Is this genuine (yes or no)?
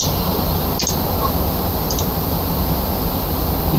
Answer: yes